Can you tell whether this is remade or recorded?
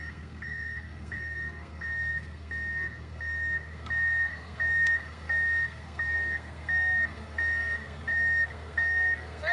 remade